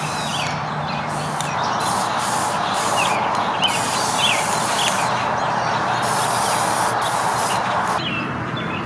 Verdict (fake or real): real